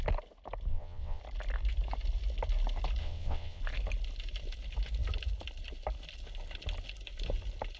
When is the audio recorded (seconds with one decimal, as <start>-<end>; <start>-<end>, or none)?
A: 0.0-0.7; 1.2-3.0; 3.6-7.8

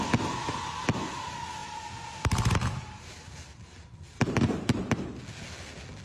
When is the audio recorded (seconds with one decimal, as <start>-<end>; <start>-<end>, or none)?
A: 0.0-1.6; 5.2-6.0

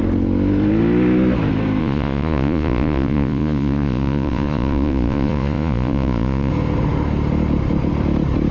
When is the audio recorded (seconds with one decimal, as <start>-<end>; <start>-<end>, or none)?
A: 0.0-1.8; 6.5-8.5

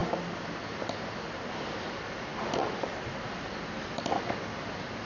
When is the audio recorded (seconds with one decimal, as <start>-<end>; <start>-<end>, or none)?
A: 0.0-5.1

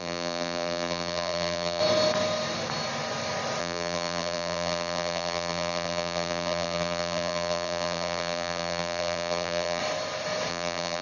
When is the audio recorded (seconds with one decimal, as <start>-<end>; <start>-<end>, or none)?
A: 1.8-3.6; 9.8-10.5